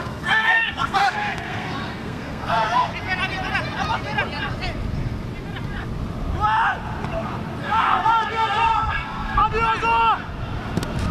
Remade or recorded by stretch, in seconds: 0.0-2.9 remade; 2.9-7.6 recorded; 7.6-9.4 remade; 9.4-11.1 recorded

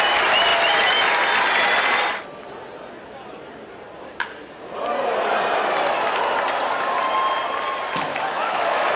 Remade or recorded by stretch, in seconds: 0.0-8.1 recorded; 8.1-9.0 remade

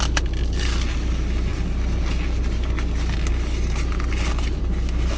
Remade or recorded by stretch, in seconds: 0.0-5.2 recorded

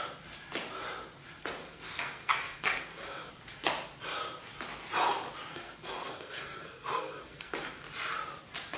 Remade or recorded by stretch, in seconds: 0.0-1.6 recorded; 1.6-3.3 remade; 3.3-5.5 recorded; 5.5-7.5 remade; 7.5-8.8 recorded

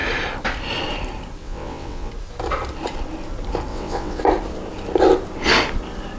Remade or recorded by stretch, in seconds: 0.0-1.4 recorded; 1.4-2.1 remade; 2.1-3.7 recorded; 3.7-4.2 remade; 4.2-6.2 recorded

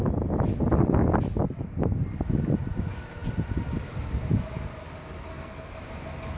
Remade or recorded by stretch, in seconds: 0.0-5.3 recorded; 5.3-5.8 remade; 5.8-6.4 recorded